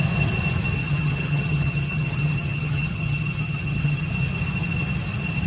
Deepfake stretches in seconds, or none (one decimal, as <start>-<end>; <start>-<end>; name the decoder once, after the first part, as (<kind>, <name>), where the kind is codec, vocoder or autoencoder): 0.8-4.1 (vocoder, HiFi-GAN)